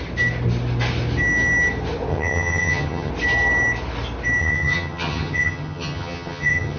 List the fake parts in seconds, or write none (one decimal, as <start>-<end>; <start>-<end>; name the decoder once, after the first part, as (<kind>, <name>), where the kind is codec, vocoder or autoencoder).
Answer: 2.1-3.1 (vocoder, HiFi-GAN); 4.4-6.8